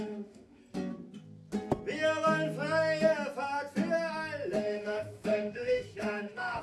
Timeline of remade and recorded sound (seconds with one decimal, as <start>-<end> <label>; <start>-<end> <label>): 0.0-0.6 remade; 0.6-4.6 recorded; 4.6-6.6 remade